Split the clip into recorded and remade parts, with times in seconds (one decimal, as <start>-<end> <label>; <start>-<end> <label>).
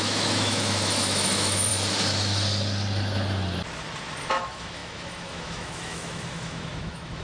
0.0-1.7 remade; 1.7-4.3 recorded; 4.3-7.2 remade